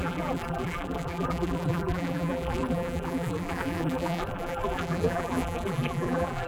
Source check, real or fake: fake